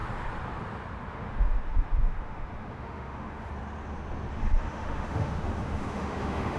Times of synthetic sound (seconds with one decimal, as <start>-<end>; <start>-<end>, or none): 1.1-3.5; 4.3-6.6

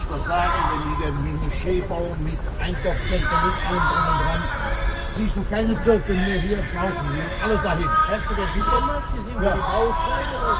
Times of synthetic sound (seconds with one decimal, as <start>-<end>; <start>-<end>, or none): 0.8-3.9; 6.2-7.0; 8.0-8.6

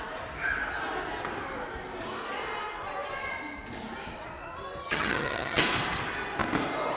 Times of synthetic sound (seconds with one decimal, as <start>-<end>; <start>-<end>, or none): 4.8-5.6

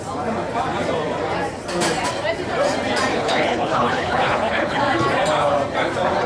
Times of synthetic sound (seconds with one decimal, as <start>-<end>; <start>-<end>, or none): 3.1-4.8

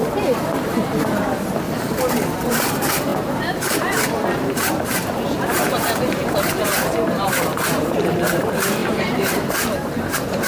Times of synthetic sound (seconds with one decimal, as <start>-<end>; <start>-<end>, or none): 2.2-10.5